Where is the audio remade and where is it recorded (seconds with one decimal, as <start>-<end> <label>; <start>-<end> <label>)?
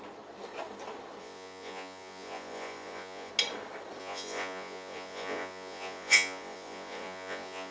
0.0-1.2 recorded; 1.2-3.3 remade; 3.3-4.0 recorded; 4.0-7.7 remade